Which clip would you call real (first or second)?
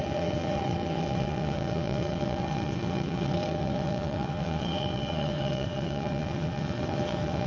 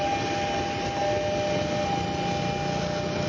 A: second